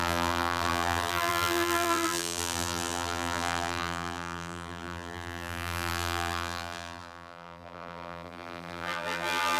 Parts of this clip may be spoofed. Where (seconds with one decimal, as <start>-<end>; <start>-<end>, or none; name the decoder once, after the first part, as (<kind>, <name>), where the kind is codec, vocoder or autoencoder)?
0.0-9.6 (vocoder, BigVGAN v2)